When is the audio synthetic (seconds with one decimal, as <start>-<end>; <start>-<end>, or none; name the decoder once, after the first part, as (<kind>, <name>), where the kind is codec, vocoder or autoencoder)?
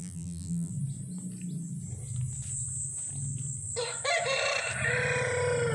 0.0-0.7 (vocoder, BigVGAN v2)